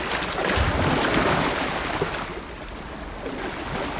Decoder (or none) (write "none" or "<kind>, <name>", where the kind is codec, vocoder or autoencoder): none